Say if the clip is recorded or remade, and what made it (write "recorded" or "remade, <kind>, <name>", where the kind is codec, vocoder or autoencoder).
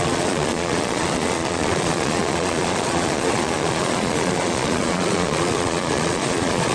remade, vocoder, Vocos